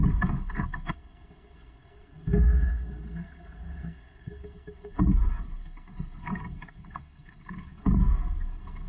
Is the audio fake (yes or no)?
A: yes